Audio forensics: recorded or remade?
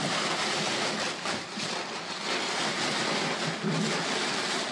recorded